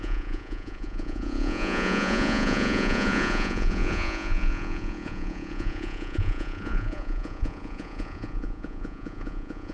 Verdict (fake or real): fake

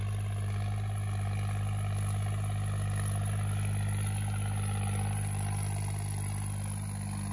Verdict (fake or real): real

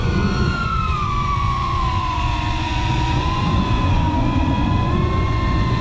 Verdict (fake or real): fake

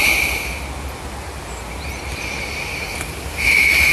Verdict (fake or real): real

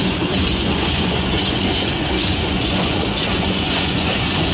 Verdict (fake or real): fake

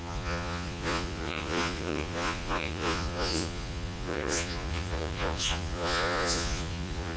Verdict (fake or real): fake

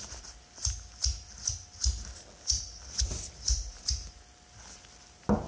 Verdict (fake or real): real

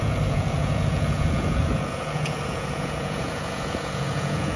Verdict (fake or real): fake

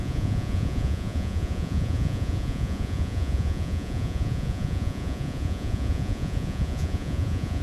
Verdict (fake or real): fake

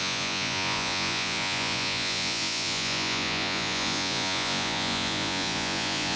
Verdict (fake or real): fake